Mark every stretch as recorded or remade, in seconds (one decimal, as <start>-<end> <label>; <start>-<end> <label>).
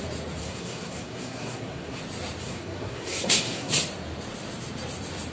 0.0-0.4 recorded; 0.4-2.0 remade; 2.0-2.4 recorded; 2.4-3.7 remade; 3.7-5.3 recorded